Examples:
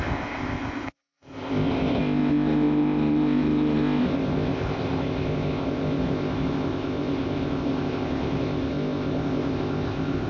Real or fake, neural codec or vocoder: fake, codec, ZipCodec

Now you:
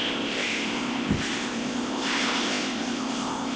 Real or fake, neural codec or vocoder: fake, codec, ZipCodec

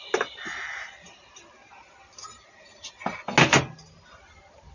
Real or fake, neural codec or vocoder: real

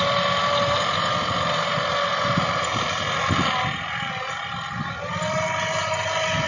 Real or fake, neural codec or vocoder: real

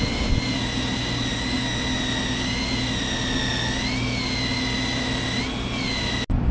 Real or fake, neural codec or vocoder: real